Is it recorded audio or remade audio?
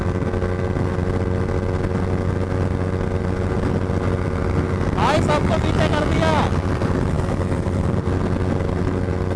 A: recorded